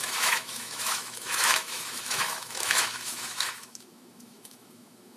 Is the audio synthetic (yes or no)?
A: yes